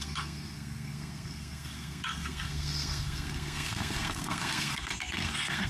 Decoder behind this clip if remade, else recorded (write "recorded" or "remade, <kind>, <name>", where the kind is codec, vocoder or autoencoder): remade, codec, SNAC